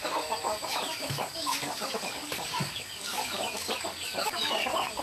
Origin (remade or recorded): remade